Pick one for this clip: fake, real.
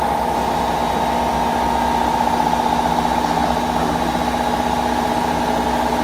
real